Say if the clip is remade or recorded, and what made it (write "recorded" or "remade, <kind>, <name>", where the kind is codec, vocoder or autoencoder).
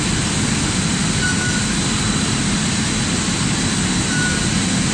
recorded